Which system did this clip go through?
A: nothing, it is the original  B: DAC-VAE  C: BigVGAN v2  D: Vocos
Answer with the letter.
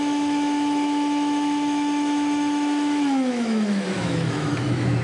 B